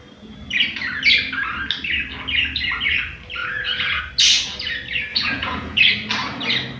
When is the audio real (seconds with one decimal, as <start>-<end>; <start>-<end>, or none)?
0.0-3.4; 4.0-5.1; 5.8-6.8